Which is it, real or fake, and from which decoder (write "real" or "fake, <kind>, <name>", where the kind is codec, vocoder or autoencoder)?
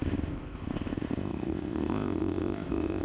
fake, codec, ZipCodec